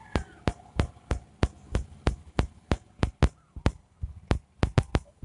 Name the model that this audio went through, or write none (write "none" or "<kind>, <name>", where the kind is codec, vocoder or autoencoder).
none